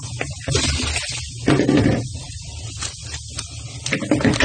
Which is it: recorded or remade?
recorded